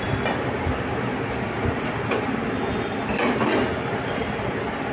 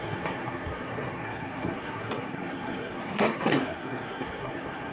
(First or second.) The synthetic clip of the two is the second